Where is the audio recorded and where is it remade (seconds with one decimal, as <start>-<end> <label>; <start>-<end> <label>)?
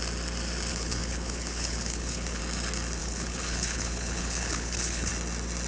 0.0-0.7 recorded; 0.7-2.4 remade; 2.4-3.0 recorded; 3.0-5.1 remade; 5.1-5.7 recorded